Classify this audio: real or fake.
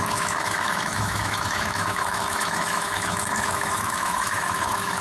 fake